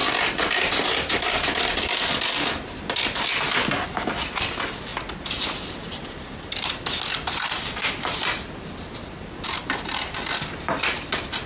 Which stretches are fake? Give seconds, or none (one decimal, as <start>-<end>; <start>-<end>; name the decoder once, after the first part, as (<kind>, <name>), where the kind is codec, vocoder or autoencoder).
none